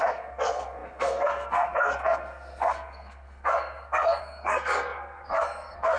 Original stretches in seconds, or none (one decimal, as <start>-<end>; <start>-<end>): none